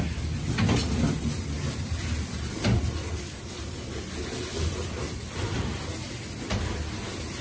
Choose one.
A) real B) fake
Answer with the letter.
A